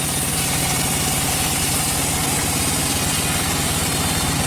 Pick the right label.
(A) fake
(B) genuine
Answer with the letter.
B